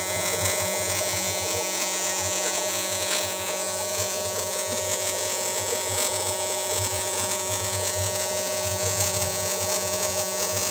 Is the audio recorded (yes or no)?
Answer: no